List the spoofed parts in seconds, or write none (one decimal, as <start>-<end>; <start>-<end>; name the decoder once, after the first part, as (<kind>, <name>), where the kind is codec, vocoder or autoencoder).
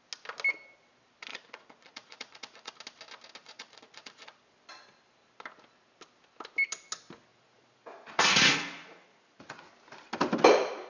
1.3-2.7 (vocoder, Vocos); 3.4-4.4; 7.3-9.7